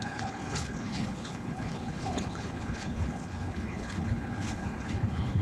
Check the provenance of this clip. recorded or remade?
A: remade